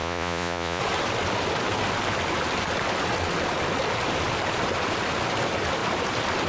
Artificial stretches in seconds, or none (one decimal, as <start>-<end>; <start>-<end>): 0.0-0.8